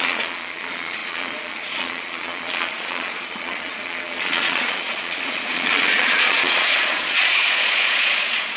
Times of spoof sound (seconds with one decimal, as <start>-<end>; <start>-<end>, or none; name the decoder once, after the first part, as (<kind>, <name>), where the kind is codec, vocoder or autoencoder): 0.0-8.6 (vocoder, Vocos)